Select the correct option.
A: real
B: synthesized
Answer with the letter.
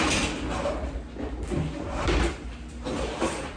A